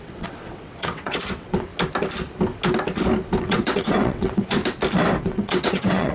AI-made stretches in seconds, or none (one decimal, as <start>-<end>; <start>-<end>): 0.0-1.7; 3.4-4.6; 5.2-6.1